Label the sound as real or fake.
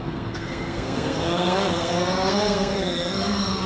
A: fake